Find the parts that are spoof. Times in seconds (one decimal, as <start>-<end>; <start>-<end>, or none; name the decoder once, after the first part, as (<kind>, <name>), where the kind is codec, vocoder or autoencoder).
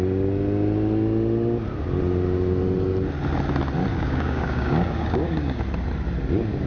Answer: 3.9-5.6 (codec, DAC)